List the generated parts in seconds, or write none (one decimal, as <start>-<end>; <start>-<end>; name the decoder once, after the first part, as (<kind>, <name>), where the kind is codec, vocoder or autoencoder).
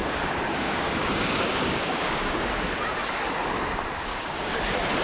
0.0-2.7 (codec, DAC); 4.1-4.6